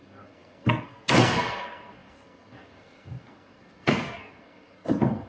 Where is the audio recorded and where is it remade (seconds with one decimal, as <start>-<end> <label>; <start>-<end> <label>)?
0.0-5.3 remade